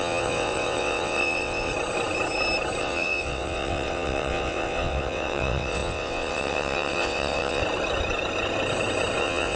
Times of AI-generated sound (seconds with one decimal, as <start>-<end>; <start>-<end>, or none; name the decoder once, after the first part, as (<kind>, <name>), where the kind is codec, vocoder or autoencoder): 0.0-1.7 (vocoder, WaveNeXt); 2.8-7.6; 9.2-9.6